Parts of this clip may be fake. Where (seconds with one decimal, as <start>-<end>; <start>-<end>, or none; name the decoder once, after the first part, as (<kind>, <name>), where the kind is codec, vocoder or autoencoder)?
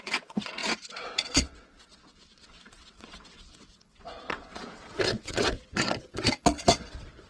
0.0-7.3 (vocoder, WaveNeXt)